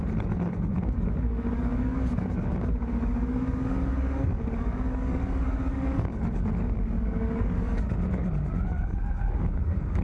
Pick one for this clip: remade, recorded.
remade